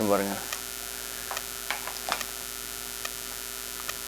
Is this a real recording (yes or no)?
yes